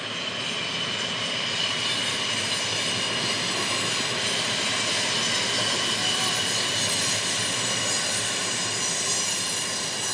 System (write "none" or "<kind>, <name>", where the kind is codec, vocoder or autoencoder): none